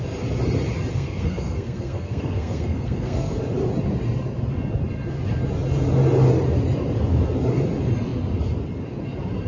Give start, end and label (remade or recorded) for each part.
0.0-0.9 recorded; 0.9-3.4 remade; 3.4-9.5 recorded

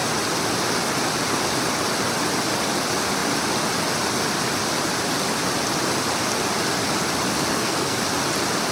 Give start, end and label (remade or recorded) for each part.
0.0-7.5 recorded; 7.5-8.0 remade; 8.0-8.7 recorded

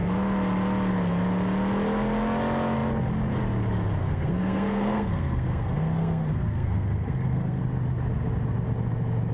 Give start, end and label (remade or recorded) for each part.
0.0-4.0 recorded; 4.0-7.6 remade; 7.6-9.3 recorded

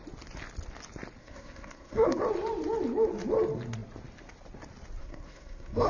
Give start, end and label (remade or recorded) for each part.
0.0-1.2 recorded; 1.2-2.2 remade; 2.2-5.0 recorded; 5.0-5.9 remade

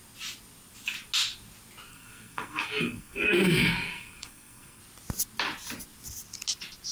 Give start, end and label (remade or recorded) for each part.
0.0-1.9 recorded; 1.9-4.8 remade; 4.8-6.9 recorded

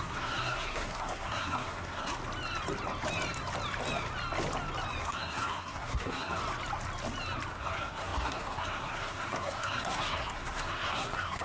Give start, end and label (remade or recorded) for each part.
0.0-2.2 remade; 2.2-5.0 recorded; 5.0-6.4 remade; 6.4-7.5 recorded; 7.5-11.4 remade